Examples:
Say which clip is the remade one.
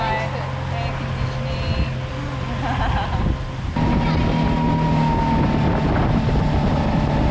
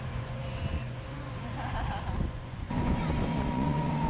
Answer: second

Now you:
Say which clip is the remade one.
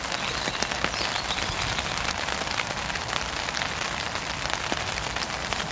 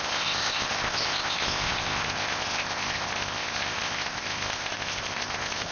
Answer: second